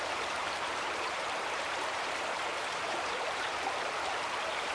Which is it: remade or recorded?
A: remade